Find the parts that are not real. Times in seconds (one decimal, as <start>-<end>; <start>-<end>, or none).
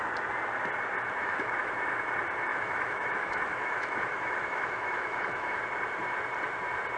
1.2-1.7; 2.5-5.6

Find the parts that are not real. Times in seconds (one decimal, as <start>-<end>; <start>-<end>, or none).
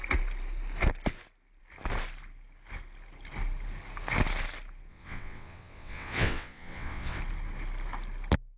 4.9-7.2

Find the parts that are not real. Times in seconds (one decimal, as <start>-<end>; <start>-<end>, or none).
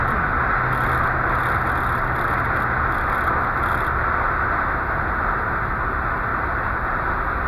none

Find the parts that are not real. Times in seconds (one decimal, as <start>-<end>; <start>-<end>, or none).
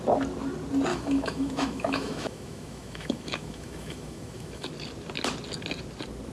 0.9-4.7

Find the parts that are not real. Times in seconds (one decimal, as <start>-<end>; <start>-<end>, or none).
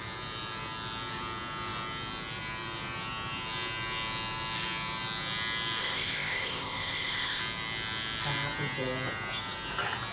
5.8-7.4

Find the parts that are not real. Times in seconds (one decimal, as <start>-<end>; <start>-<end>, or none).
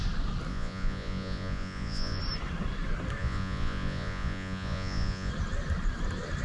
0.5-2.2; 3.2-5.3